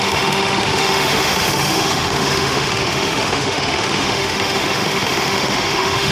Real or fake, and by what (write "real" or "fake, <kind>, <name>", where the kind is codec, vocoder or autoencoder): fake, autoencoder, DAC-VAE